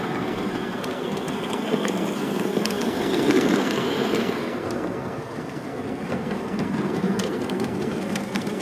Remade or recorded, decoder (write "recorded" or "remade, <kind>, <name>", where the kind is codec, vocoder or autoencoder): remade, codec, SNAC